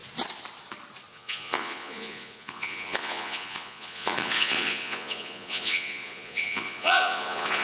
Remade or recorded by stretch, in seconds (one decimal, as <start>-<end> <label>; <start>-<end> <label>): 0.0-1.1 recorded; 1.1-7.6 remade